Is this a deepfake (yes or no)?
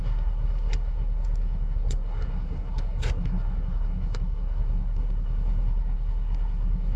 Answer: yes